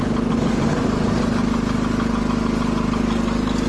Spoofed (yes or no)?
no